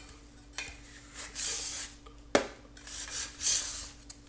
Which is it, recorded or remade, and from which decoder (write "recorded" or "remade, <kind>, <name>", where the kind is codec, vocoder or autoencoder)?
recorded